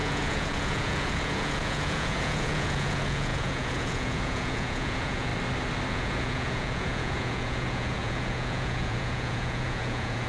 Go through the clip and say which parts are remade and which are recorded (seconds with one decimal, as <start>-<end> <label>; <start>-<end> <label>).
0.0-5.3 remade; 5.3-5.9 recorded; 5.9-10.3 remade